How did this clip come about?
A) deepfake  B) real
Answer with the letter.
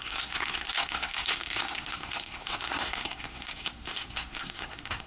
A